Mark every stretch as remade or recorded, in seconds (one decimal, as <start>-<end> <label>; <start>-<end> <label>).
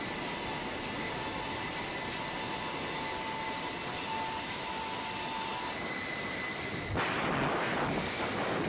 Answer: 0.0-8.7 recorded